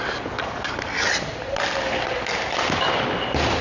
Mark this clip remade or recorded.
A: recorded